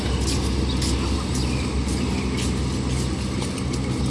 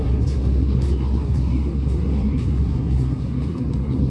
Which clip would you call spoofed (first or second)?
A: second